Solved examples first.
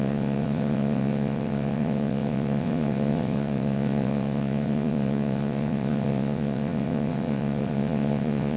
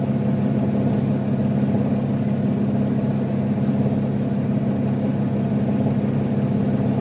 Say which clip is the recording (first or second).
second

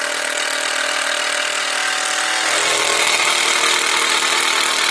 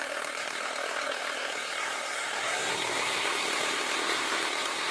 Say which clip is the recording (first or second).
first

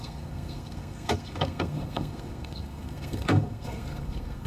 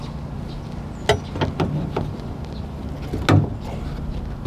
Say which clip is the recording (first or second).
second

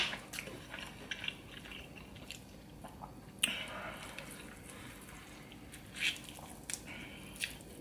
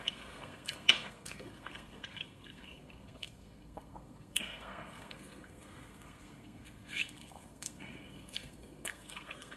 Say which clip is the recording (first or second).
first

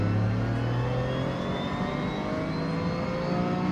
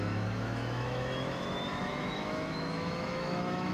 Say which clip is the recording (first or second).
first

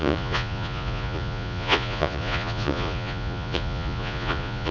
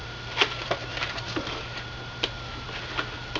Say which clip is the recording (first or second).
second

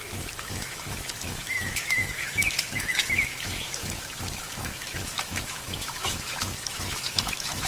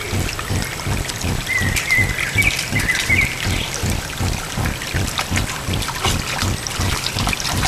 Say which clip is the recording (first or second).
second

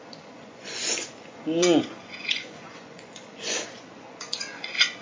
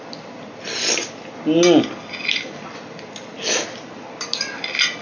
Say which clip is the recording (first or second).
second